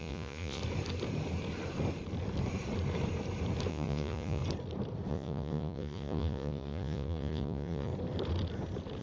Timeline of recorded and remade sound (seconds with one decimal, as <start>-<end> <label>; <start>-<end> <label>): 0.0-0.6 remade; 0.6-3.7 recorded; 3.7-4.4 remade; 4.4-5.1 recorded; 5.1-7.9 remade; 7.9-9.0 recorded